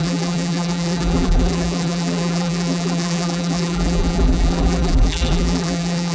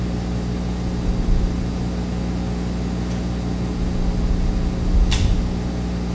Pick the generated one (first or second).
first